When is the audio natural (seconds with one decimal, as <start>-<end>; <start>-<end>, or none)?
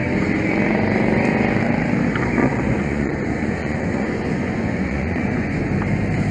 0.0-2.4; 5.6-6.3